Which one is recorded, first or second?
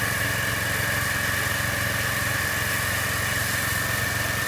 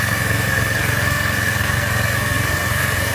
first